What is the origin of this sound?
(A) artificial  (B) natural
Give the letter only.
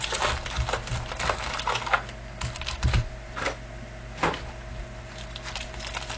B